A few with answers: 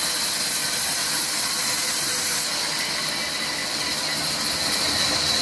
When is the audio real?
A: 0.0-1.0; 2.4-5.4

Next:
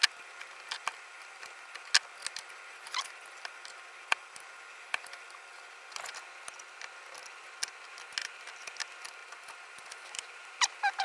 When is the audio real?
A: 0.0-11.0

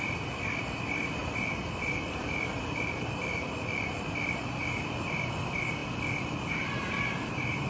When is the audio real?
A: 0.0-1.2; 4.5-7.7

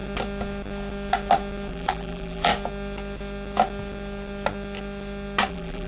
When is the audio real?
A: 0.0-1.7; 2.5-5.5